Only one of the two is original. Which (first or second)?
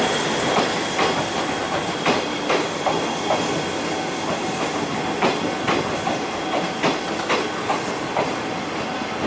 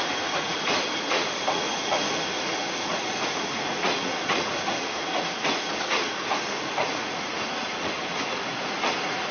first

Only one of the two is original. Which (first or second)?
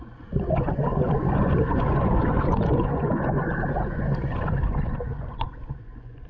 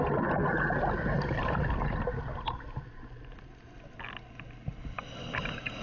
second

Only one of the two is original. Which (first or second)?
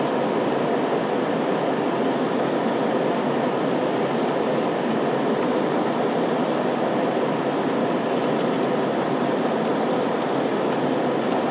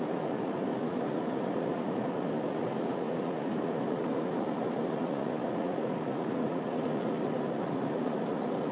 first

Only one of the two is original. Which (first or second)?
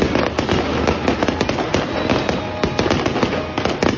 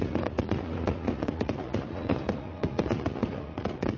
first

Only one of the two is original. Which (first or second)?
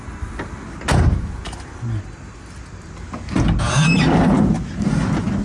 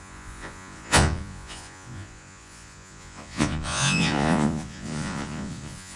first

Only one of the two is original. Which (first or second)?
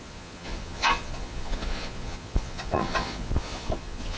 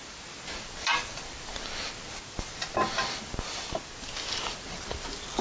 second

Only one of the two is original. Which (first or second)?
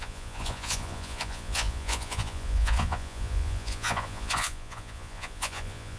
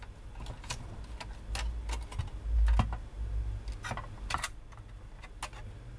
second